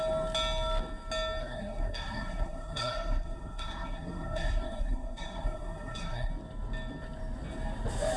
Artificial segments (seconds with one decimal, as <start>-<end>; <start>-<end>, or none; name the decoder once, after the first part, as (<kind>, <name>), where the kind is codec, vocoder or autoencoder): 1.4-6.3 (codec, SNAC)